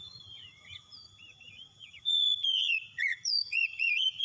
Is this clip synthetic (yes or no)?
yes